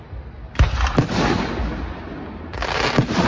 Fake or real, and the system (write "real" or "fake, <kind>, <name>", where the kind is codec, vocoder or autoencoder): real